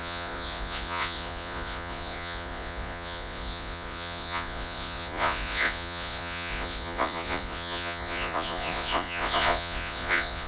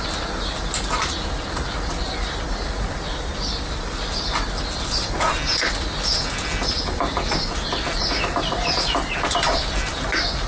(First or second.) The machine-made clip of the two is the first